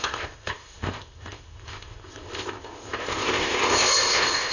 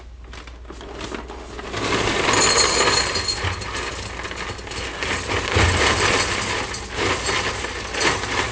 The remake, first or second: first